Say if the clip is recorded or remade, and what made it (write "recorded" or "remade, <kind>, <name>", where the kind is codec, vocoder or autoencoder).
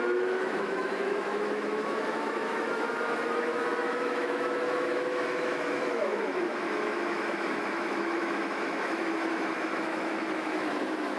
remade, autoencoder, DAC-VAE